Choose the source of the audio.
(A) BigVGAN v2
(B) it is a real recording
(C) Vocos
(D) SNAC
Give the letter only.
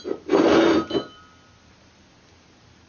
B